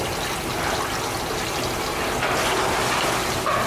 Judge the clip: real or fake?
real